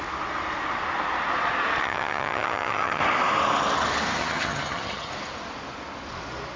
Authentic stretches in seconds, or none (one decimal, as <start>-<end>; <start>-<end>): 0.0-1.8; 3.0-4.2; 5.1-6.6